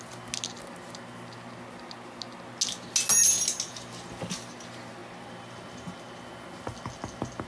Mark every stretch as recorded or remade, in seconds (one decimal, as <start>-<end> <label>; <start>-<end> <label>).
0.0-7.5 recorded

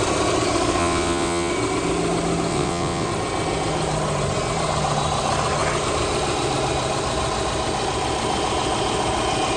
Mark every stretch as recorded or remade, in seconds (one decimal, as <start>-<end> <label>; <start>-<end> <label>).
0.0-0.8 recorded; 0.8-1.5 remade; 1.5-2.5 recorded; 2.5-3.1 remade; 3.1-9.6 recorded

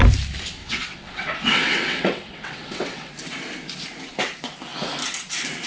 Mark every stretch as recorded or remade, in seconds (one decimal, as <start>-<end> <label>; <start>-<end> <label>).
0.0-0.6 recorded; 0.6-3.1 remade; 3.1-5.7 recorded

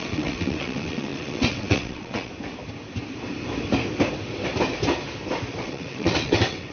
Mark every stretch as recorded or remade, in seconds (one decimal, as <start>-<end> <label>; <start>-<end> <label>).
0.0-2.3 remade; 2.3-5.6 recorded; 5.6-6.7 remade

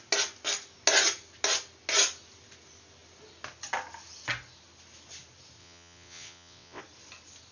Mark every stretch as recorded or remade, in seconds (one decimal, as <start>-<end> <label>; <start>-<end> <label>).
0.0-5.6 recorded; 5.6-6.8 remade; 6.8-7.5 recorded